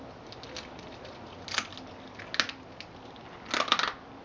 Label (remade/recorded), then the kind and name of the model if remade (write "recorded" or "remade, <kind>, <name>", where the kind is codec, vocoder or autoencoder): recorded